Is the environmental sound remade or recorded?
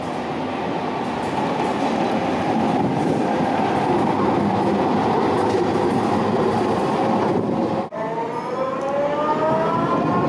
recorded